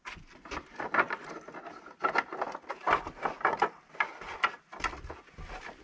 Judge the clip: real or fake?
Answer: real